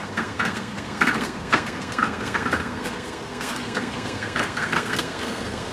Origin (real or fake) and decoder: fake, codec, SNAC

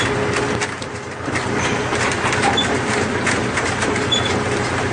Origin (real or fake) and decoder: real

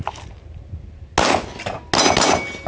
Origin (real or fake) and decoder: real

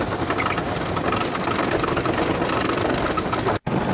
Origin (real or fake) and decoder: real